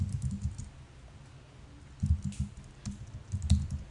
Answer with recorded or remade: recorded